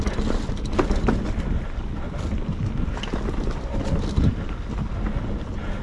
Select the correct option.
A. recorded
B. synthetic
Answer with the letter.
A